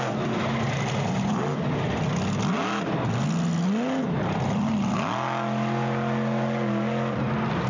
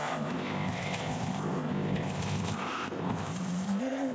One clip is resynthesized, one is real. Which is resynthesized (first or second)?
second